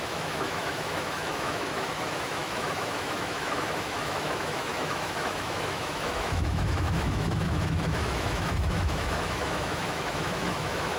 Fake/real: fake